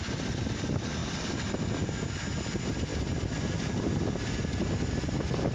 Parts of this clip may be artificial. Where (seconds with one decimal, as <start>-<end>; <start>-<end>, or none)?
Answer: none